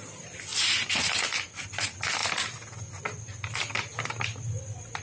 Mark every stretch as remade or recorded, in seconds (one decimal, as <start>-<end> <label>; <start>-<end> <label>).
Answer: 0.0-0.5 remade; 0.5-1.7 recorded; 1.7-2.2 remade; 2.2-4.6 recorded; 4.6-5.0 remade